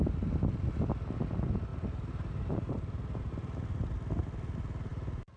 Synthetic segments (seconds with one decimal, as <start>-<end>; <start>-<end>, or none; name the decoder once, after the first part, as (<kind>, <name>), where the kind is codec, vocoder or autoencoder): 1.7-3.3 (vocoder, BigVGAN v2); 4.9-5.4